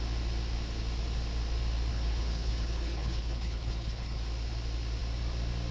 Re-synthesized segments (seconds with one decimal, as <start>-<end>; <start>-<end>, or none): 1.9-4.2